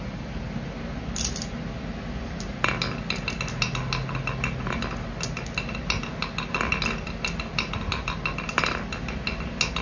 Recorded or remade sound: recorded